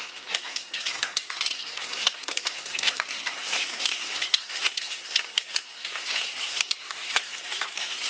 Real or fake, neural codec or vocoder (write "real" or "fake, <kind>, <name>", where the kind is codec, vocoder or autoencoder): fake, codec, SNAC